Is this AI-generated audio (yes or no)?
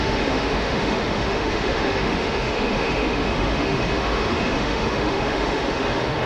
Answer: yes